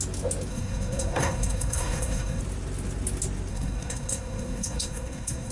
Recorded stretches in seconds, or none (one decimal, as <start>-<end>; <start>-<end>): 0.0-0.5; 2.4-3.5